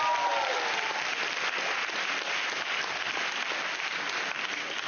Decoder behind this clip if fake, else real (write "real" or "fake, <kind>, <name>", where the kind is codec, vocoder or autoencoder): real